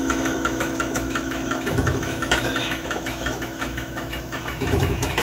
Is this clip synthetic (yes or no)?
yes